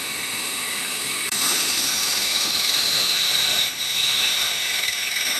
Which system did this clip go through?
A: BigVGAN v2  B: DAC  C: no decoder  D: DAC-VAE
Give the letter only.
D